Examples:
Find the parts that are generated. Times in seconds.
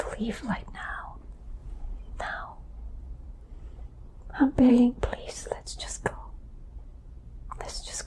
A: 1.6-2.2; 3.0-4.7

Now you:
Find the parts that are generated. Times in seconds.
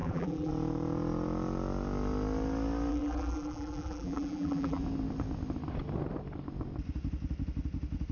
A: 0.0-0.5; 2.9-4.8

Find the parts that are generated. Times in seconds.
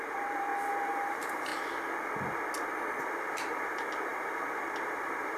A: 0.0-0.5; 1.1-1.5; 3.0-5.4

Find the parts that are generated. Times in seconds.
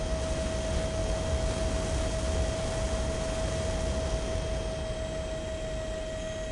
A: none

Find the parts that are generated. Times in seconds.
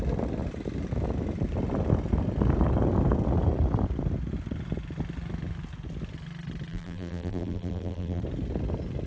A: 6.7-8.2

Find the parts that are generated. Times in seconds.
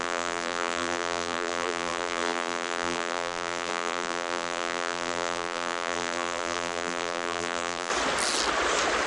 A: 0.0-7.9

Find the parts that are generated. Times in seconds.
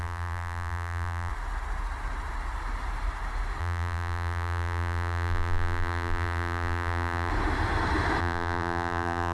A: 0.0-1.3; 3.6-7.3; 8.2-9.3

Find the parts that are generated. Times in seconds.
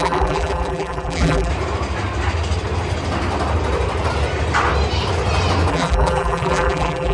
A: 0.0-1.5; 5.7-7.1